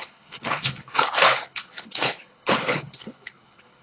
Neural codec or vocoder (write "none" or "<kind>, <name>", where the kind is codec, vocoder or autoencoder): codec, HILCodec